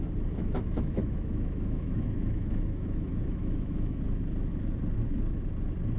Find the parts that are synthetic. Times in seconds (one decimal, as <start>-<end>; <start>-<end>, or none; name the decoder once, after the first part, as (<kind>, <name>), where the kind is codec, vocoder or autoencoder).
0.4-4.0 (autoencoder, DAC-VAE)